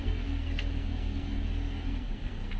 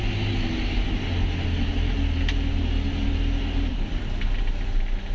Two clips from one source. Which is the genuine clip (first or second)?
second